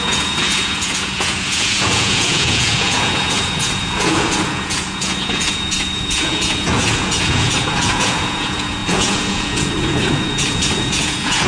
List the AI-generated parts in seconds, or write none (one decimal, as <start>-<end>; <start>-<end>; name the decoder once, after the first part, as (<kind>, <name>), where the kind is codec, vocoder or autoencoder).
0.0-11.5 (vocoder, Vocos)